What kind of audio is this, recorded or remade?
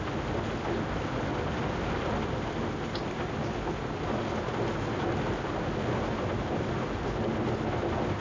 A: recorded